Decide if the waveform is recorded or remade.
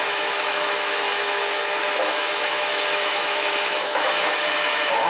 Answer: remade